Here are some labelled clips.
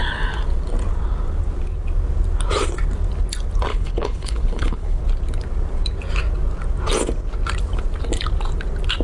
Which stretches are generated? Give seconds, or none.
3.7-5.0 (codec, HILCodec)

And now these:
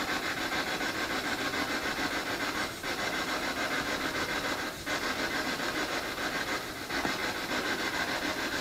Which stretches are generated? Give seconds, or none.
none

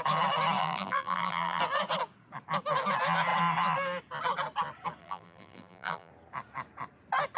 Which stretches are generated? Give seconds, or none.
0.6-1.6 (vocoder, BigVGAN v2); 5.0-6.1

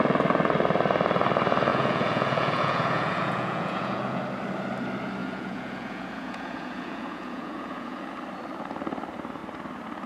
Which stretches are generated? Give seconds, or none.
1.7-4.2 (vocoder, Vocos); 5.2-8.1

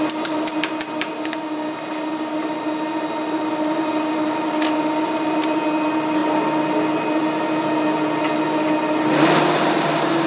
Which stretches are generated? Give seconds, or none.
none

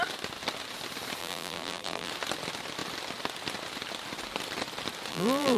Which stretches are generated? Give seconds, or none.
1.2-2.1 (vocoder, BigVGAN v2); 5.1-5.6

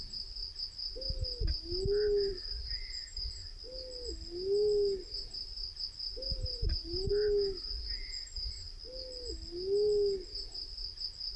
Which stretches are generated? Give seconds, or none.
2.3-3.2 (vocoder, BigVGAN v2); 6.3-7.1